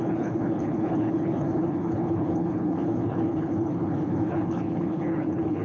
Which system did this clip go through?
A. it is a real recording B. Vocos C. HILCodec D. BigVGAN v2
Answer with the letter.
C